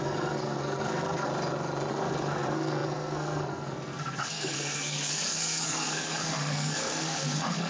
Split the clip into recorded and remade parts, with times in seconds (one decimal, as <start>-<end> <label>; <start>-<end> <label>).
0.0-1.3 remade; 1.3-1.9 recorded; 1.9-7.7 remade